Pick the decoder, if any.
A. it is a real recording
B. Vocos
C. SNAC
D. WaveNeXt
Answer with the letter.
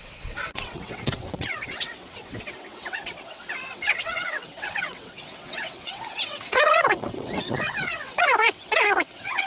D